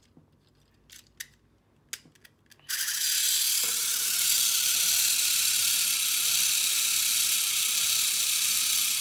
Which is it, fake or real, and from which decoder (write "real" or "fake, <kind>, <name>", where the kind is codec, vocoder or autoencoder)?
real